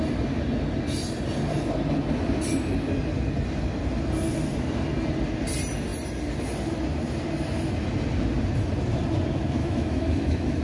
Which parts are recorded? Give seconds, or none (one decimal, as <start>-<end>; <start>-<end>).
0.0-9.6